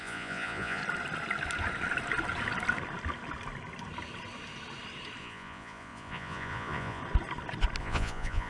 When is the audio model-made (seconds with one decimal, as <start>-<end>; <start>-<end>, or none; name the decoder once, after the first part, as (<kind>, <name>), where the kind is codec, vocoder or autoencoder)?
0.0-0.8 (vocoder, Vocos); 5.2-7.0; 7.8-8.5